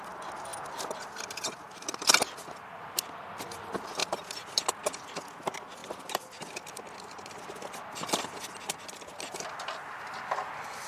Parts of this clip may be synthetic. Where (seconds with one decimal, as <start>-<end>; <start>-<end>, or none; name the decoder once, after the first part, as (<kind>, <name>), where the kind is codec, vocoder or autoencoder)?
none